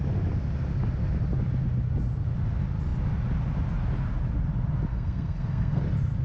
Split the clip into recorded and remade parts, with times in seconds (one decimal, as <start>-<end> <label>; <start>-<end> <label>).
0.0-4.9 recorded; 4.9-5.8 remade; 5.8-6.2 recorded